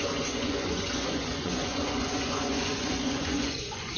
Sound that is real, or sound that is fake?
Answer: fake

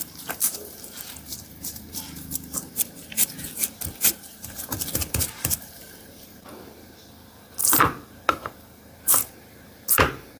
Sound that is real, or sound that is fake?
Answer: fake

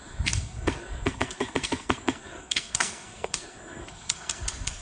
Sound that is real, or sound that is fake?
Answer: fake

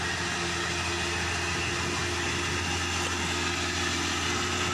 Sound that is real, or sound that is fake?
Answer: real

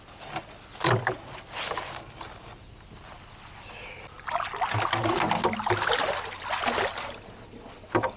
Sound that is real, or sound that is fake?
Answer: real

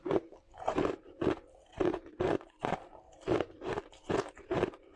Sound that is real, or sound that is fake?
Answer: fake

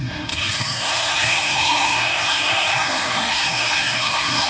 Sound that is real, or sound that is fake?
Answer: fake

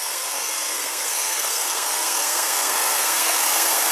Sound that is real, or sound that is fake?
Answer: fake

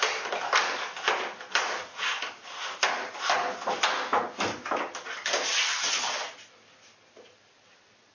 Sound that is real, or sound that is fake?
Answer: real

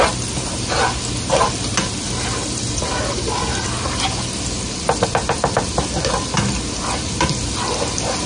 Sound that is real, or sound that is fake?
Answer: real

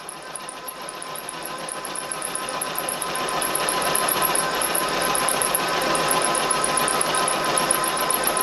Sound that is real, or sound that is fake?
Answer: fake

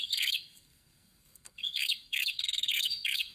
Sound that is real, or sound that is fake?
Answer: fake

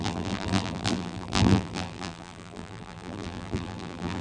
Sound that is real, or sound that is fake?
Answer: fake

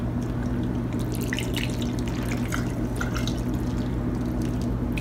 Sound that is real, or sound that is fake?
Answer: real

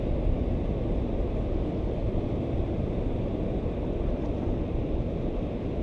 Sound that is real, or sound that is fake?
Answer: real